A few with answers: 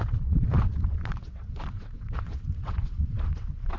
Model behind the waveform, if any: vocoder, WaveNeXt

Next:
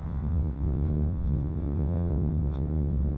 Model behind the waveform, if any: vocoder, WaveNeXt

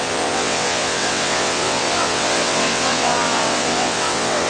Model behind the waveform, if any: vocoder, WaveNeXt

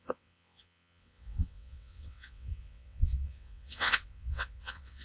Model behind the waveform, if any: vocoder, WaveNeXt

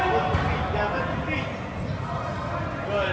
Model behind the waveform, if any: none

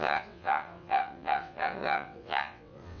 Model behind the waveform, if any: vocoder, WaveNeXt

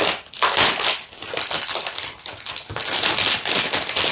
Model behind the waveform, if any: none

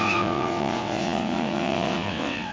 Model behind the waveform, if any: vocoder, WaveNeXt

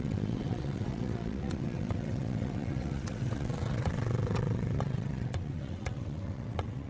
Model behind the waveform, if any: vocoder, WaveNeXt